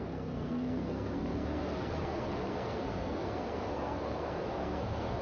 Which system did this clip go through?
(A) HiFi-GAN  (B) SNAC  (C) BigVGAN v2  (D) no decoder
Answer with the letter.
B